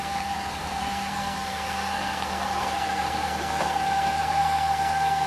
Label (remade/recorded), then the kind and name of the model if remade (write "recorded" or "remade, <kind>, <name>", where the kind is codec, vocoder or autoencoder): remade, codec, SNAC